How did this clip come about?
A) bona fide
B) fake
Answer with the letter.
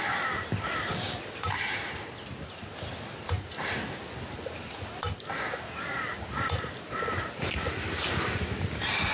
A